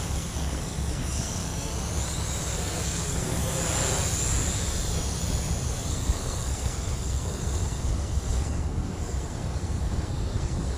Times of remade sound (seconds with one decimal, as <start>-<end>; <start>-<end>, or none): 0.0-1.7; 2.5-3.4; 5.7-10.8